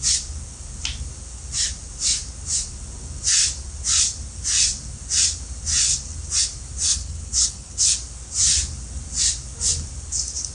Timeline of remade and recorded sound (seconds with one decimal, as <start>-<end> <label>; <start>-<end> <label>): 0.0-6.9 recorded; 6.9-7.8 remade; 7.8-10.5 recorded

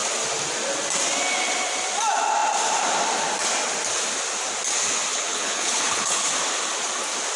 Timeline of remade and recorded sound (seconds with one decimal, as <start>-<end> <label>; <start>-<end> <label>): 0.0-5.1 recorded; 5.1-6.3 remade; 6.3-7.4 recorded

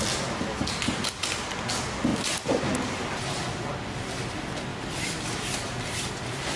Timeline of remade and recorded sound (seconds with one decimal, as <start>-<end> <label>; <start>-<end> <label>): 0.0-6.6 recorded

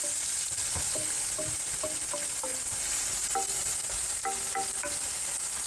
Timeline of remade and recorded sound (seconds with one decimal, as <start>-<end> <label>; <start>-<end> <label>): 0.0-0.8 recorded; 0.8-1.3 remade; 1.3-5.7 recorded